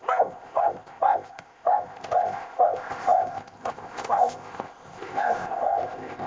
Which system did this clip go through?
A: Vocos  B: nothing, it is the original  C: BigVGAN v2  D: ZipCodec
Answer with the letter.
D